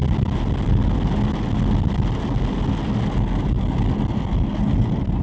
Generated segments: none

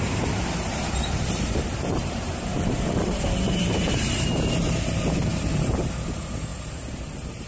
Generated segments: 0.0-7.5 (vocoder, BigVGAN v2)

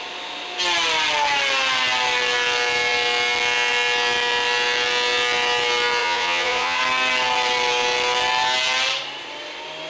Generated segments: 6.0-6.8 (vocoder, Vocos)

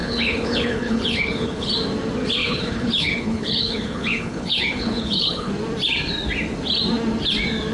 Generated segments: 0.0-1.7 (codec, HILCodec); 2.4-5.5

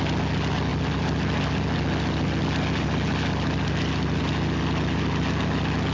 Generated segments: none

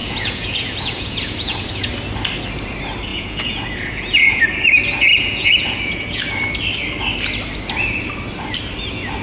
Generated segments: 0.0-1.9 (vocoder, Vocos); 3.1-4.4; 5.1-6.2